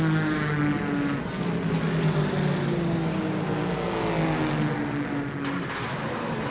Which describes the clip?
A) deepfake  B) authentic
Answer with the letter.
B